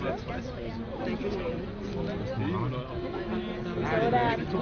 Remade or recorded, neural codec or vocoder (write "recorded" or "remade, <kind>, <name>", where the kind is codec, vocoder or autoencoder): recorded